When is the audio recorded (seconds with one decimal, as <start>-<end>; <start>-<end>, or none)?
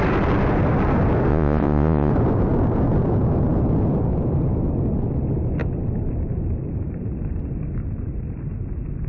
0.0-1.3; 2.1-9.1